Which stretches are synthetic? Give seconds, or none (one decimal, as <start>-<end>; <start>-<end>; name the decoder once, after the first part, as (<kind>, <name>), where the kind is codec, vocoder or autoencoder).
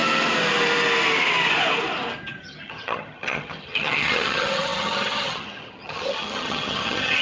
2.4-7.2 (vocoder, HiFi-GAN)